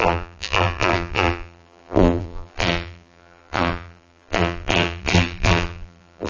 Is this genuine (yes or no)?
no